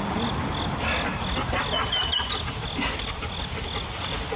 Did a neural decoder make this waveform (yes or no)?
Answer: no